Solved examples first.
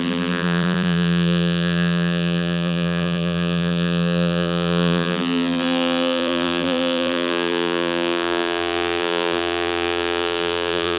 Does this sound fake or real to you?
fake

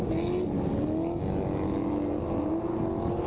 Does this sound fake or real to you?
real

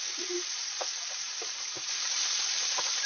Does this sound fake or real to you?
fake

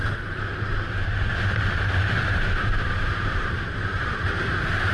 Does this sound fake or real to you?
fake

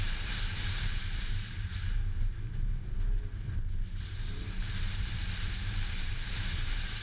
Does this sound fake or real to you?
fake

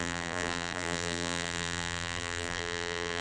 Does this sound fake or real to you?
fake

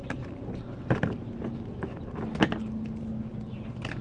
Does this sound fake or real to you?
real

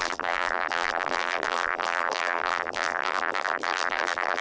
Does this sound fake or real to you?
fake